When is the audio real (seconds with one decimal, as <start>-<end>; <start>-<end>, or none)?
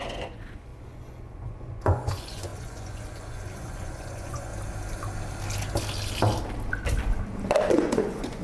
4.5-7.7